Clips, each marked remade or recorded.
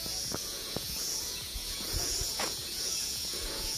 remade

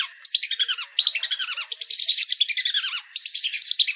recorded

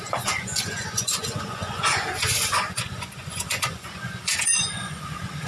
remade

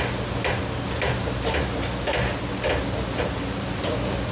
recorded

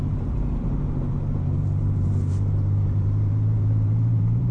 remade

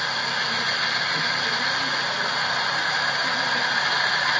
recorded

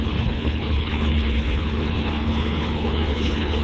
remade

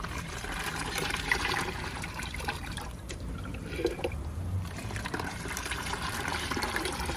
remade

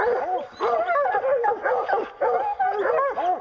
recorded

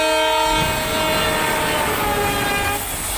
recorded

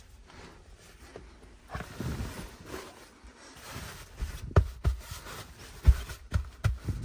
remade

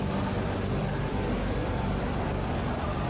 remade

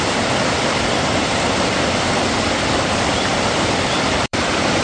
remade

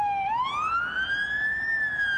recorded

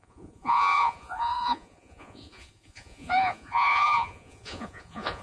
remade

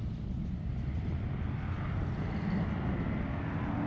recorded